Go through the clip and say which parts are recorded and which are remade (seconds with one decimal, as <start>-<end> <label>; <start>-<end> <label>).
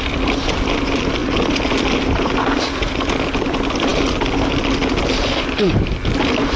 0.0-6.6 recorded